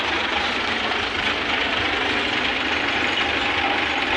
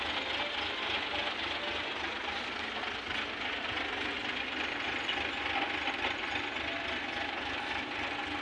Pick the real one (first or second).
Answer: second